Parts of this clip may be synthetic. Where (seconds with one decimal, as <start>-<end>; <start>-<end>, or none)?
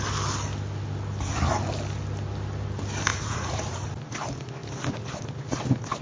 3.1-3.9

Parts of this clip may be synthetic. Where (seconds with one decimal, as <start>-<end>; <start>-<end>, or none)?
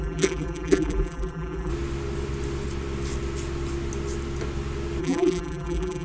0.0-1.7; 5.0-6.0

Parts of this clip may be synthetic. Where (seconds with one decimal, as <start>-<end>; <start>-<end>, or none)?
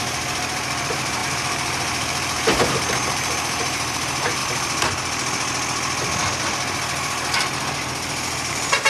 0.0-4.4; 8.5-8.9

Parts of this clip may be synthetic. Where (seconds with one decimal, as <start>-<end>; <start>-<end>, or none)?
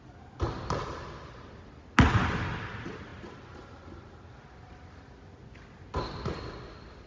none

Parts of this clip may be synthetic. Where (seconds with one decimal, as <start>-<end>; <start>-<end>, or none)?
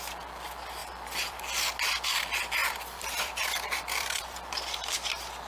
0.8-1.4; 2.6-4.5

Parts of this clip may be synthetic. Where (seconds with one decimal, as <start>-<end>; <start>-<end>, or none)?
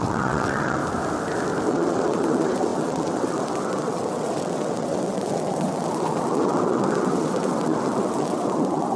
0.0-0.8; 1.7-9.0